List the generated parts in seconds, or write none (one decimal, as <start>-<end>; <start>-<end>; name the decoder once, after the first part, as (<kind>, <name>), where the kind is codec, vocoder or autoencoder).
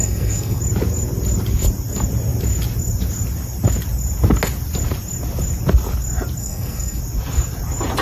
0.0-0.6 (codec, SNAC); 6.4-7.0